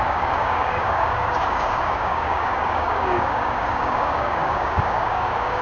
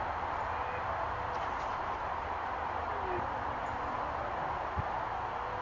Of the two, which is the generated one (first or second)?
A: first